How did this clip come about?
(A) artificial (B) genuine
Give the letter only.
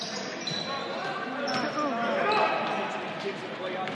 B